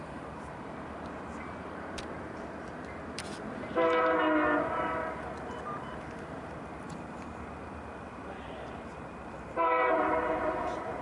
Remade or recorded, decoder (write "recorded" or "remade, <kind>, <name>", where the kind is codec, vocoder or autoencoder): remade, vocoder, BigVGAN v2